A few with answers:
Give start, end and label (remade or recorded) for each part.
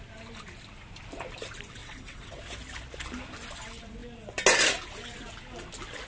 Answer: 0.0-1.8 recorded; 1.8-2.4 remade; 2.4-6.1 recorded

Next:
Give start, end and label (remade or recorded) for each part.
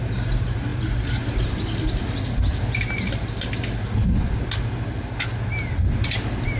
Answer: 0.0-6.6 recorded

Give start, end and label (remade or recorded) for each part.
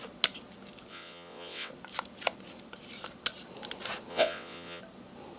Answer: 0.0-0.9 recorded; 0.9-1.7 remade; 1.7-4.1 recorded; 4.1-4.8 remade; 4.8-5.4 recorded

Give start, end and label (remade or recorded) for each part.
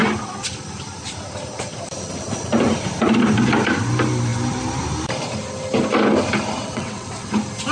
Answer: 0.0-6.6 recorded; 6.6-7.3 remade; 7.3-7.7 recorded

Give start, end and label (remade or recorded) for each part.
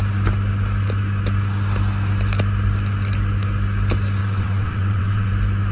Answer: 0.0-4.2 recorded; 4.2-5.3 remade; 5.3-5.7 recorded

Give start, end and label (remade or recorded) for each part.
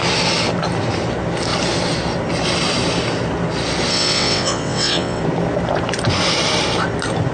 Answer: 0.0-3.9 recorded; 3.9-5.2 remade; 5.2-7.3 recorded